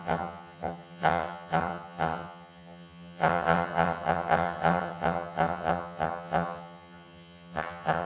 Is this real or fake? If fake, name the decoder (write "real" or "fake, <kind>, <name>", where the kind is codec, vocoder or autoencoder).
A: fake, vocoder, HiFi-GAN